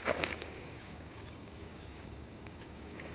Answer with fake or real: fake